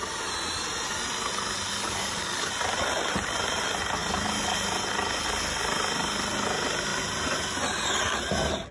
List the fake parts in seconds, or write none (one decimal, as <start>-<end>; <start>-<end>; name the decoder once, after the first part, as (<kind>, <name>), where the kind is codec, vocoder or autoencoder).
1.7-2.5 (codec, DAC)